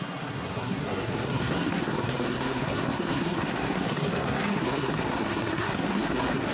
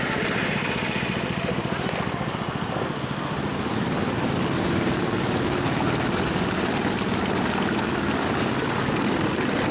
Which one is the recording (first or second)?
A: second